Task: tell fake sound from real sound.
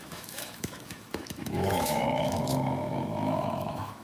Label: fake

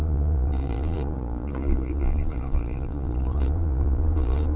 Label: fake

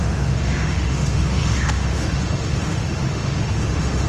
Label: fake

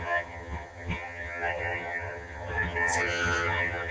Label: fake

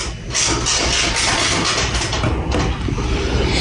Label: real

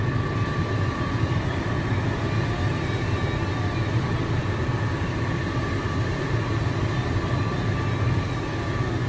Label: real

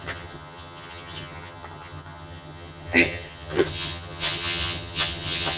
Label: fake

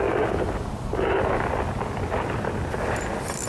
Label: real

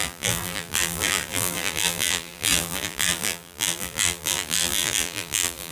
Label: fake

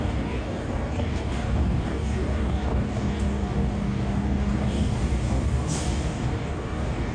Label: fake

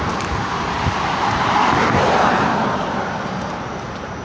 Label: fake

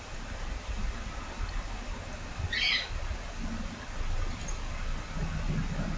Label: real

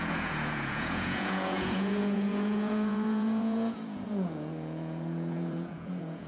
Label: fake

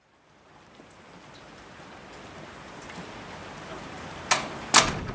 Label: real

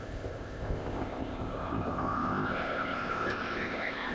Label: fake